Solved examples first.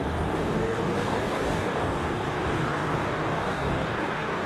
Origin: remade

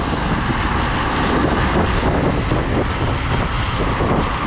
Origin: recorded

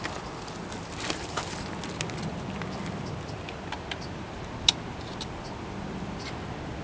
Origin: recorded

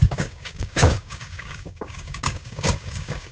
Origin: remade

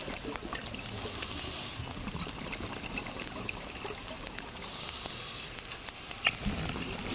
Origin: recorded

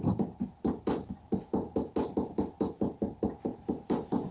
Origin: recorded